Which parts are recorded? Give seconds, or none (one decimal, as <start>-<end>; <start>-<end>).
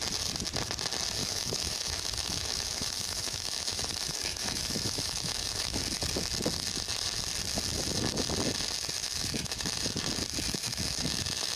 0.0-1.2; 5.8-9.0; 9.9-10.7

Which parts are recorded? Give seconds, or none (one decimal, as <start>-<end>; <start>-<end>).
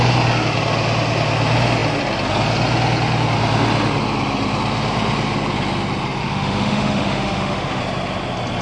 0.0-6.2; 7.8-8.6